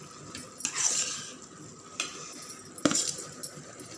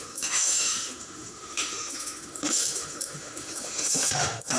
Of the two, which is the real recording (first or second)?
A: first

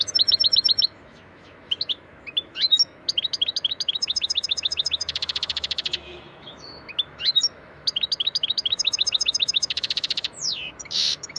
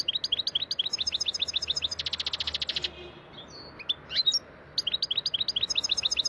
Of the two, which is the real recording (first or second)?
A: second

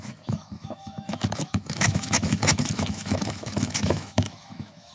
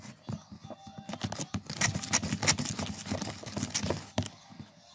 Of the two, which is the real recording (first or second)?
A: second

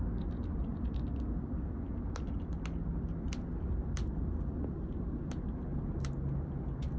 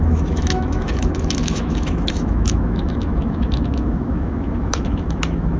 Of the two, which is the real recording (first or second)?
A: first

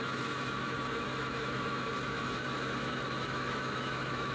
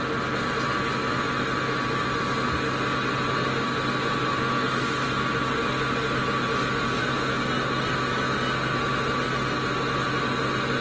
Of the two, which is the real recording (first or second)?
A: second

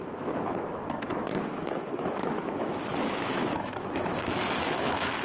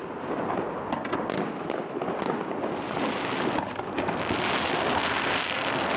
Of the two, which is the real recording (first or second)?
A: second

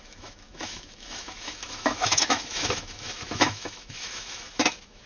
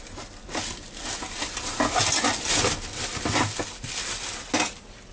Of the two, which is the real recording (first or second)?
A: second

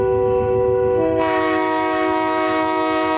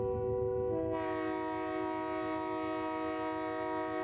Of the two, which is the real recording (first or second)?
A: second